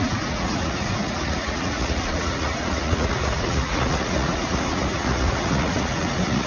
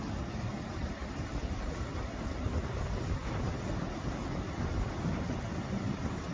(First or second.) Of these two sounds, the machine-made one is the first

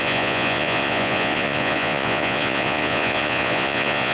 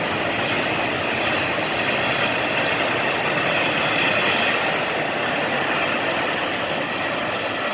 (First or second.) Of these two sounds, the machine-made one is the first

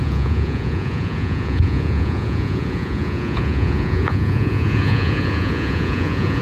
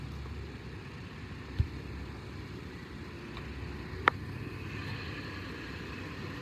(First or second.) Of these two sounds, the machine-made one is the first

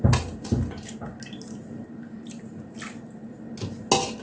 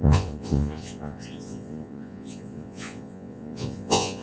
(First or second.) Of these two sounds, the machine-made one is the second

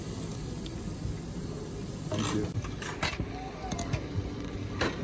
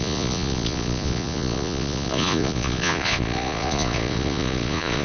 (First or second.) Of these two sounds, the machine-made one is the second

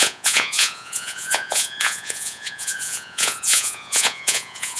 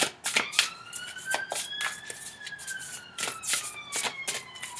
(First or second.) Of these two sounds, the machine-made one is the first